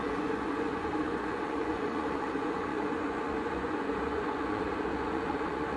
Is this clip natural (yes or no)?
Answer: no